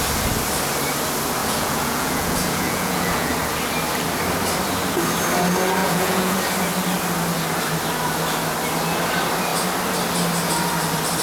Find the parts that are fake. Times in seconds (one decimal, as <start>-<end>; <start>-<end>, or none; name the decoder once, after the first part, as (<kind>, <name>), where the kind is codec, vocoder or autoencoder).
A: 1.4-3.3 (vocoder, Vocos); 5.8-6.4